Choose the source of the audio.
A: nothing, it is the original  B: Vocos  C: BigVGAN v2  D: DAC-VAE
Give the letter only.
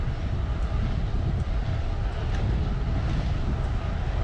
A